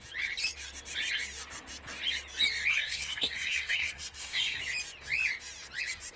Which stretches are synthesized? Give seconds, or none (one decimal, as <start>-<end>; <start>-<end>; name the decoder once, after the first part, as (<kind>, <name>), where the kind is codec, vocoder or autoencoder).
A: 2.7-4.6 (codec, SNAC)

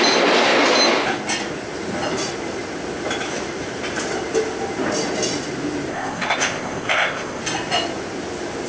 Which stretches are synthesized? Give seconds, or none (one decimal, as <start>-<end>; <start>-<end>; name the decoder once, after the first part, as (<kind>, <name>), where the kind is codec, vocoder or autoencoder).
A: 5.9-7.4 (codec, ZipCodec)

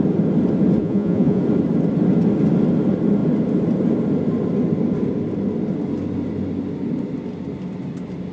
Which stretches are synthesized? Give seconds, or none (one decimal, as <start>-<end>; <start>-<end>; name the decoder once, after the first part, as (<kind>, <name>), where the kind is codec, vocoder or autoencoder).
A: 0.8-1.4 (vocoder, Vocos)

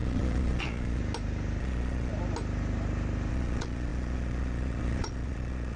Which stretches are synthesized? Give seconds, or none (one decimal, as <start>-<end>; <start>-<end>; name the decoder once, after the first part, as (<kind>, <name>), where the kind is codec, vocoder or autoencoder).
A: 0.0-1.0 (vocoder, Vocos); 1.6-2.1; 3.3-5.8

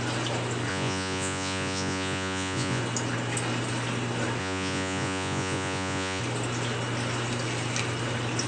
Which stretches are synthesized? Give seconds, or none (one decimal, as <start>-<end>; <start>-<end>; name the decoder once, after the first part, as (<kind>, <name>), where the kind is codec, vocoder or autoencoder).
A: 0.7-2.8 (vocoder, Vocos); 4.4-6.2

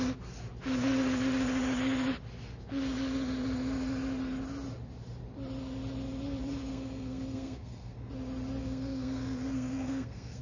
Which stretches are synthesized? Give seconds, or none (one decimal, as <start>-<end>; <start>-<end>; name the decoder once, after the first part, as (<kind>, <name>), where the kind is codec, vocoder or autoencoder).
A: 6.7-8.1 (codec, SNAC); 8.6-10.4

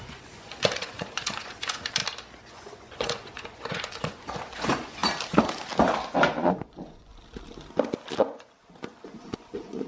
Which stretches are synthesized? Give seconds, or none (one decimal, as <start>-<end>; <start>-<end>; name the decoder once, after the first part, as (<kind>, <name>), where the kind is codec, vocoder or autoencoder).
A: 0.0-2.0 (vocoder, Vocos); 2.5-5.0; 6.3-7.1; 8.2-9.9

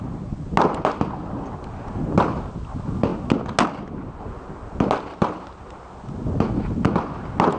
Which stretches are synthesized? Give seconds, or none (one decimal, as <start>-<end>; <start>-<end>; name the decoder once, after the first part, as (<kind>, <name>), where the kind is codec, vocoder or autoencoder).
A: none